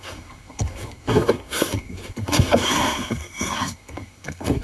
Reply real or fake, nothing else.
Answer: fake